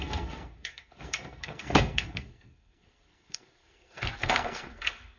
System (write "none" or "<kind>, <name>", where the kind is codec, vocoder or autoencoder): codec, SNAC